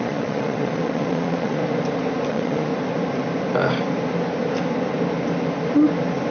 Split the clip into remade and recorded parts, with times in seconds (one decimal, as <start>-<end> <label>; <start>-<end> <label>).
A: 0.0-1.6 remade; 1.6-2.3 recorded; 2.3-2.7 remade; 2.7-6.3 recorded